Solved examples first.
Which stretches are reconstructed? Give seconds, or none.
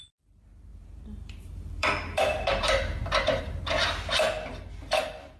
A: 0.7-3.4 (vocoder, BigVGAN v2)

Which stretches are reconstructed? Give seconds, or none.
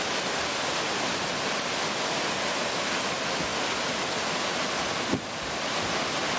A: none